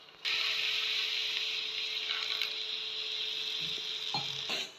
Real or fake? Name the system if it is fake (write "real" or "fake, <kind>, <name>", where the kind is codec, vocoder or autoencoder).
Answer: real